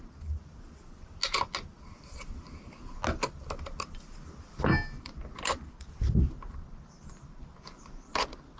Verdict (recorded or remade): recorded